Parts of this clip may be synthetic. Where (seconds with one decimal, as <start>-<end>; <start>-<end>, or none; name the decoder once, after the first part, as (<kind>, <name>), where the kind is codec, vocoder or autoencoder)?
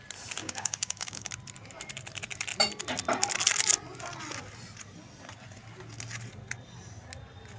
0.4-1.3 (codec, DAC)